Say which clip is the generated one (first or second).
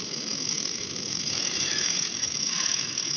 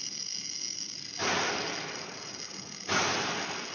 first